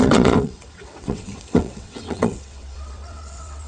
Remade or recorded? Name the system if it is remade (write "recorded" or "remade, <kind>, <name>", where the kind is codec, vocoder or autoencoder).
remade, vocoder, WaveNeXt